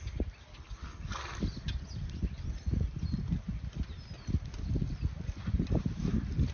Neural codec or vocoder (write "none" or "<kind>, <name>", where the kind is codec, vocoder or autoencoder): none